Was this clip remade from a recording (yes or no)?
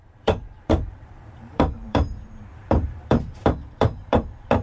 yes